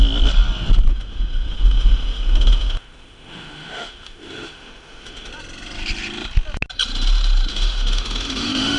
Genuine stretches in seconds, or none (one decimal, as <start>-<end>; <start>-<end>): 0.0-0.9; 5.3-7.5